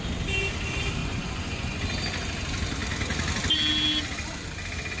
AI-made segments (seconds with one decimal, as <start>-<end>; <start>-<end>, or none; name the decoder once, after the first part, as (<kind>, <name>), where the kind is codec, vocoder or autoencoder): 1.0-1.8 (vocoder, Vocos)